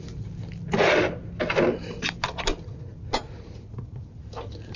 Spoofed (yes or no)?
no